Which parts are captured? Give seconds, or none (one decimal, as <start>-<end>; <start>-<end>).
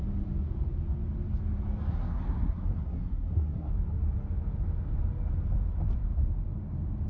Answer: 0.0-1.9; 3.7-7.1